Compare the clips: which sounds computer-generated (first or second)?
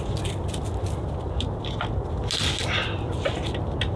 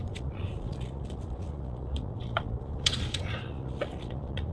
second